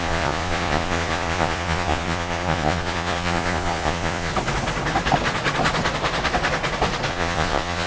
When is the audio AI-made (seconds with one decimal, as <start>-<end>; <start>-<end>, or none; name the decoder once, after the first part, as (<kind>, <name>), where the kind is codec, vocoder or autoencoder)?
0.0-4.3 (vocoder, Vocos); 7.1-7.9